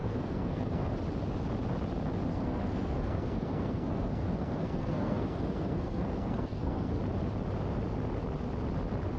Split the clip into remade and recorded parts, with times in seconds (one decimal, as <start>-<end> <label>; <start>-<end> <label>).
0.0-0.9 remade; 0.9-2.3 recorded; 2.3-7.0 remade; 7.0-9.2 recorded